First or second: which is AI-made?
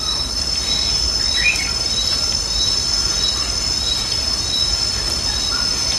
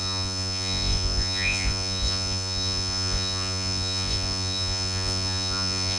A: second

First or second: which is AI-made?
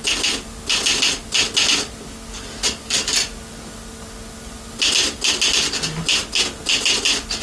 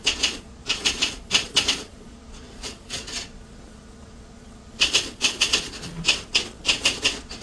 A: second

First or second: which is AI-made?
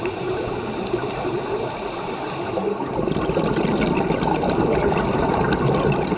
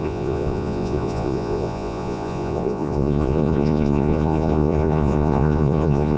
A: second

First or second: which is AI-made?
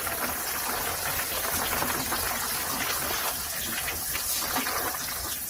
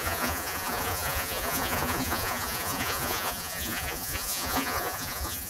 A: second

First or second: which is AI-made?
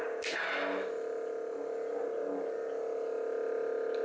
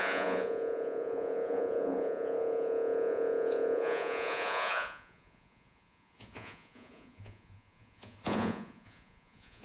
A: second